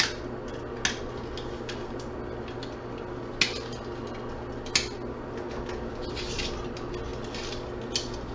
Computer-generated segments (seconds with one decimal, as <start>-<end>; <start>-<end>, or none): none